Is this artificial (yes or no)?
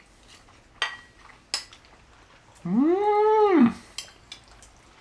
no